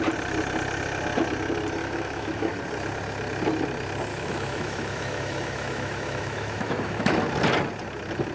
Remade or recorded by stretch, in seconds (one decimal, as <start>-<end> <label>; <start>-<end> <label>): 0.0-1.8 recorded; 1.8-2.6 remade; 2.6-4.1 recorded; 4.1-7.2 remade; 7.2-8.3 recorded

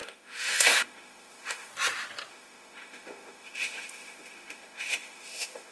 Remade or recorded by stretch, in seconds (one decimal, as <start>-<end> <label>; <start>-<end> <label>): 0.0-1.7 remade; 1.7-2.3 recorded; 2.3-5.7 remade

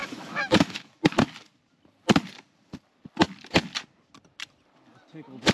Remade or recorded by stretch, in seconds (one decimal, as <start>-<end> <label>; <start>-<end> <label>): 0.0-1.0 remade; 1.0-5.5 recorded

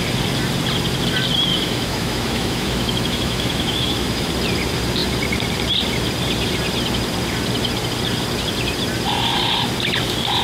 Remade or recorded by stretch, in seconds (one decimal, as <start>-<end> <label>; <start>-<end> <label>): 0.0-1.5 recorded; 1.5-4.3 remade; 4.3-10.4 recorded

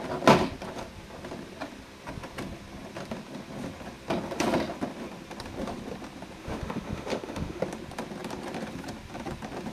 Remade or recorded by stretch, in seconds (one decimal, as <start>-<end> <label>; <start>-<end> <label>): 0.0-6.4 recorded; 6.4-7.6 remade; 7.6-9.7 recorded

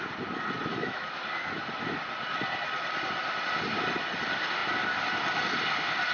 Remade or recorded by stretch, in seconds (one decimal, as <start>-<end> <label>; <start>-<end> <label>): 0.0-0.7 recorded; 0.7-1.2 remade; 1.2-6.1 recorded